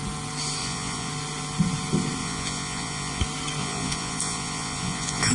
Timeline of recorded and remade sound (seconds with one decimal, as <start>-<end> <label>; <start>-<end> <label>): 0.0-0.6 recorded; 0.6-1.1 remade; 1.1-2.2 recorded; 2.2-3.2 remade; 3.2-3.6 recorded; 3.6-5.3 remade